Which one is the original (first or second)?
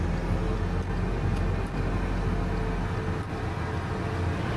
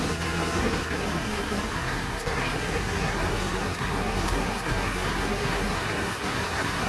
first